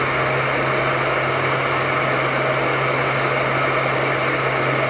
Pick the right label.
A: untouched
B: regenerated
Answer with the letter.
A